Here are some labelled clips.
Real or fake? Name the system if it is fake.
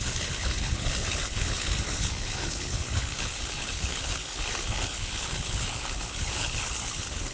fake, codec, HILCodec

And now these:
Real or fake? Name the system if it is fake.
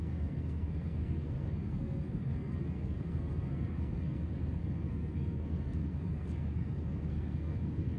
fake, codec, SNAC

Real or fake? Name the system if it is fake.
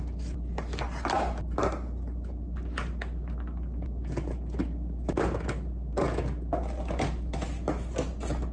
real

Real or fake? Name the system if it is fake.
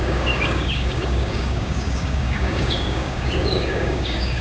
fake, codec, DAC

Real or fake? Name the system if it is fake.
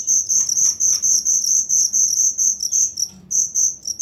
real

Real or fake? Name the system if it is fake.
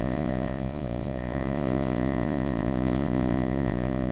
fake, vocoder, Vocos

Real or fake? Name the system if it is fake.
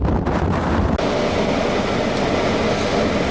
real